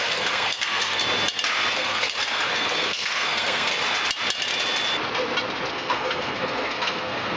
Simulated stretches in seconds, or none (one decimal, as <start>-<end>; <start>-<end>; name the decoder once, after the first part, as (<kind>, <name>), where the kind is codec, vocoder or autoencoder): 0.0-1.0 (codec, SNAC); 1.7-3.7; 5.7-7.4